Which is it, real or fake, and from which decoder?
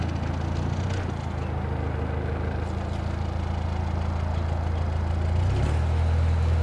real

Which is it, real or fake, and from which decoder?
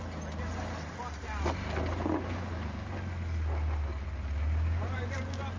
real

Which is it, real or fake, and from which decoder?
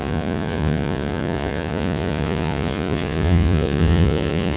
fake, vocoder, Vocos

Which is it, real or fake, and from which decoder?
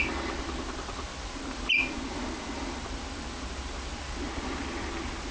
real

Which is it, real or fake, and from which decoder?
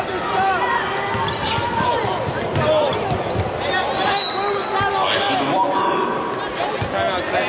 real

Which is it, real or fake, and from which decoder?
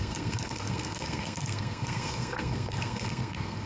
fake, codec, SNAC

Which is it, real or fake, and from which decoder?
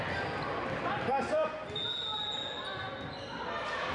real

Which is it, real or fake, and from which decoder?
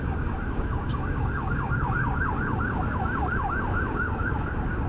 fake, codec, DAC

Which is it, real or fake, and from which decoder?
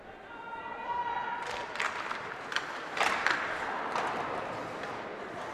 real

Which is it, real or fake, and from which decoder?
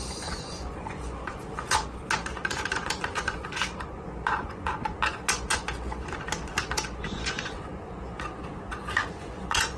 fake, vocoder, Vocos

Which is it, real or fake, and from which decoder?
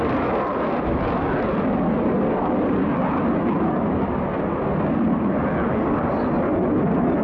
real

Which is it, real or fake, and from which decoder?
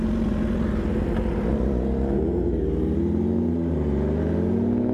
real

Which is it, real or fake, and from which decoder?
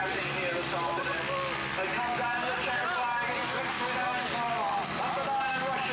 real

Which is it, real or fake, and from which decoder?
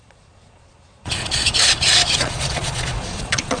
fake, vocoder, Vocos